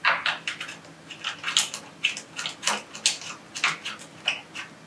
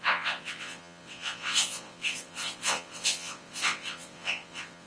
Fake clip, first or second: second